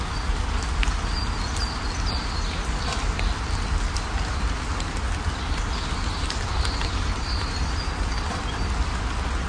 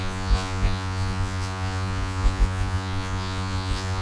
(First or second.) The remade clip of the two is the second